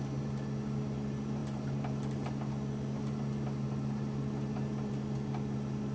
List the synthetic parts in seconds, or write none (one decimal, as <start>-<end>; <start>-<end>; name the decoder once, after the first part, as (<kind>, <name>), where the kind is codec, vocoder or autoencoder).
none